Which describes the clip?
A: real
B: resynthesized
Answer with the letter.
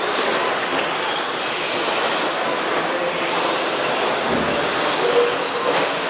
A